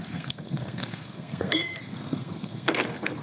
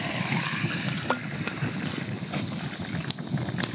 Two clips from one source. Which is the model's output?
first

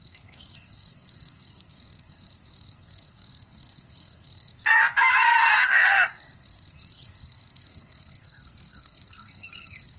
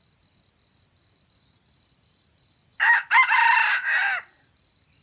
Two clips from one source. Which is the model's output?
first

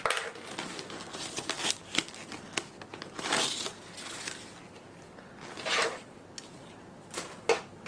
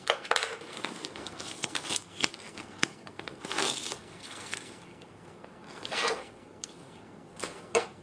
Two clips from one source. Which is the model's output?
second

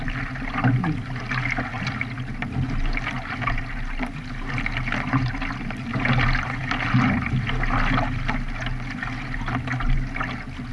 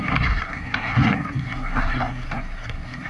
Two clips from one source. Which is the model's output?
second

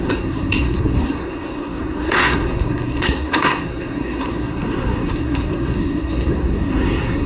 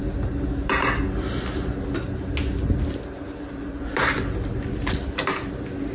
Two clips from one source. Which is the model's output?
first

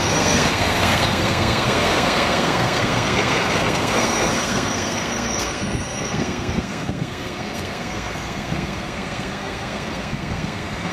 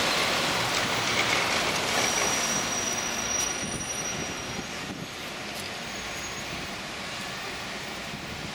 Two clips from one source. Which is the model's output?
first